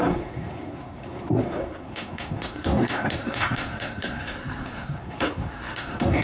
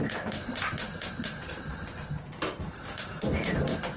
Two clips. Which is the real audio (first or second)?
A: second